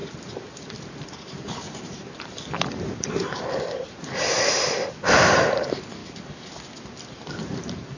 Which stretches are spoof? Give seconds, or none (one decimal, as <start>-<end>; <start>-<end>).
0.0-6.0; 7.4-8.0